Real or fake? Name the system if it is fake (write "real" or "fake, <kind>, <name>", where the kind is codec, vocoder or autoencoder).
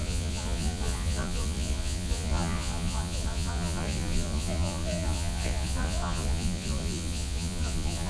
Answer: fake, vocoder, Vocos